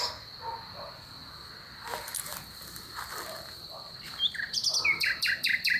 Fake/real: real